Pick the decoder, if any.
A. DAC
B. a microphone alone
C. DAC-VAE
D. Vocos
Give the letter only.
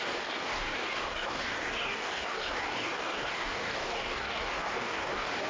A